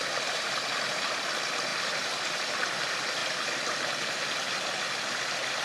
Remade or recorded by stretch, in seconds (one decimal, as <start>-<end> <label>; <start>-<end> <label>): 0.0-0.5 remade; 0.5-1.7 recorded; 1.7-2.8 remade; 2.8-5.6 recorded